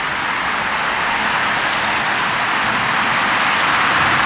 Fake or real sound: real